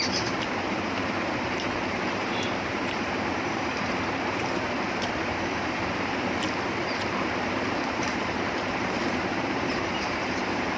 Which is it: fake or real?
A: fake